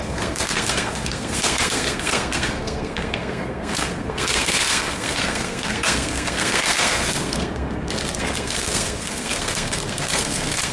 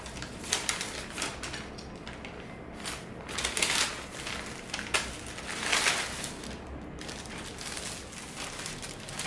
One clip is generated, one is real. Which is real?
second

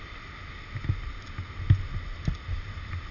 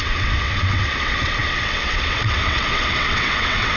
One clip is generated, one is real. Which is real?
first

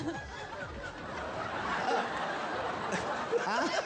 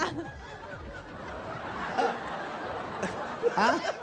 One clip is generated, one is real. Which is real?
second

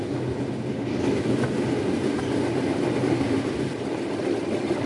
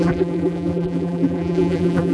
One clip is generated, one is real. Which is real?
first